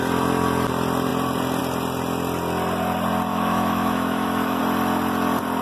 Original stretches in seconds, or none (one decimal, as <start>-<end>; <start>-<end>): 0.0-3.3; 4.6-5.6